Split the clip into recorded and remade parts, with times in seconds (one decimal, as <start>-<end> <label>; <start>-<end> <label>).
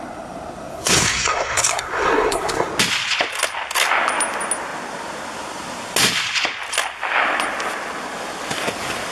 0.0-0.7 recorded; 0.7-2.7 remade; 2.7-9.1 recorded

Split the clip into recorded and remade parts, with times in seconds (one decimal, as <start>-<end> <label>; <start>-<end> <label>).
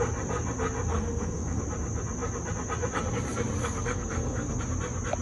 0.0-0.9 recorded; 0.9-1.6 remade; 1.6-3.6 recorded; 3.6-4.6 remade; 4.6-5.2 recorded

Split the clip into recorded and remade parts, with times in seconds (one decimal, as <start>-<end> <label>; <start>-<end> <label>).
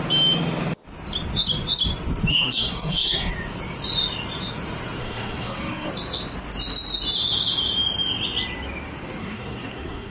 0.0-2.3 recorded; 2.3-3.3 remade; 3.3-5.0 recorded; 5.0-5.9 remade; 5.9-9.2 recorded; 9.2-10.1 remade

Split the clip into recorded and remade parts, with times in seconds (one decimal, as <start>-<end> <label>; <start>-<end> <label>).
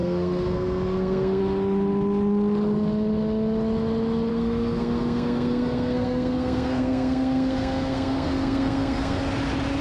0.0-1.4 remade; 1.4-4.3 recorded; 4.3-9.2 remade; 9.2-9.8 recorded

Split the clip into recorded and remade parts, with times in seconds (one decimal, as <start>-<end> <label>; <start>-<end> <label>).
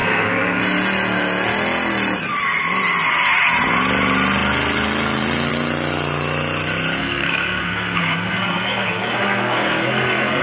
0.0-0.6 remade; 0.6-7.0 recorded; 7.0-10.4 remade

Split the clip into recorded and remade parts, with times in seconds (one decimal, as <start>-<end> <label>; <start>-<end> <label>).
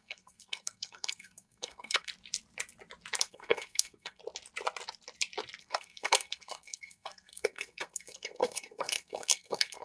0.0-2.1 remade; 2.1-3.2 recorded; 3.2-4.2 remade; 4.2-5.6 recorded; 5.6-9.8 remade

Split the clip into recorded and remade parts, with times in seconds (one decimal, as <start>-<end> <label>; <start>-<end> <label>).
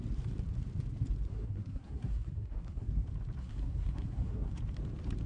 0.0-1.3 recorded; 1.3-2.9 remade; 2.9-3.4 recorded; 3.4-4.6 remade; 4.6-5.3 recorded